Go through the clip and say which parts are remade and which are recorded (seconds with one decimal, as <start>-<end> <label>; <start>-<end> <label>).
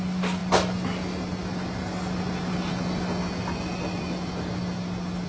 0.0-5.3 recorded